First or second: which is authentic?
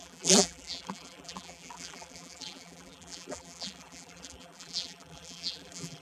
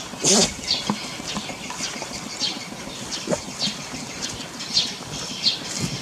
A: second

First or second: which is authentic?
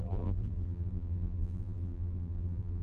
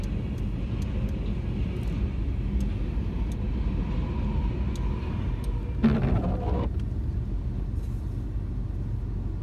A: second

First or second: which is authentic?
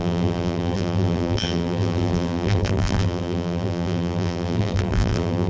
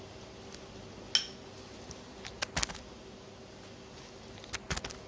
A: second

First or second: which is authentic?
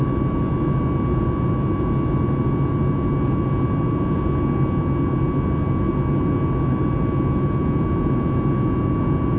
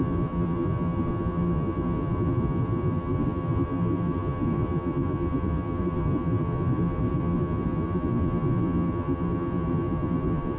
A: first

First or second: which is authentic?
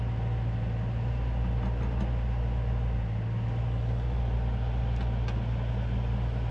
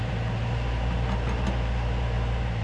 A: first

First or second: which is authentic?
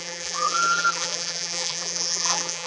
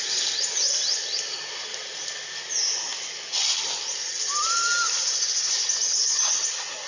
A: second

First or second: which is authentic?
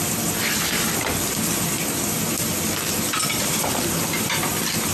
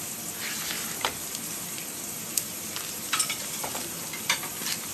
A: first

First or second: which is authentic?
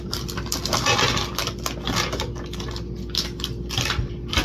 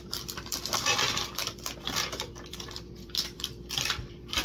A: first